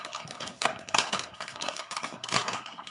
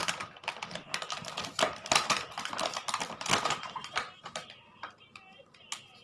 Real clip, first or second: second